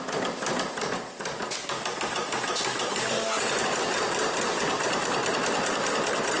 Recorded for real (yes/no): yes